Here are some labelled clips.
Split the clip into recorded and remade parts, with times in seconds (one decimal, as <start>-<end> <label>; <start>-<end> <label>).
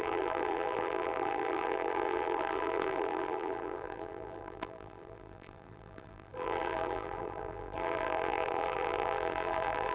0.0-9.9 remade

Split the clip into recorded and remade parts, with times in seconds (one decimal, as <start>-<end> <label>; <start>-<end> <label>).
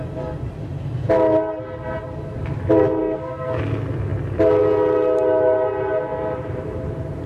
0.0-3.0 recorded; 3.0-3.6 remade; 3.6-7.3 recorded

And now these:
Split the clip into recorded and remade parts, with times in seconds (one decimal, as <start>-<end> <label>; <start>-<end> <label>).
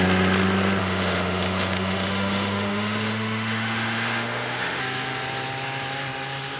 0.0-0.8 recorded; 0.8-4.8 remade; 4.8-6.6 recorded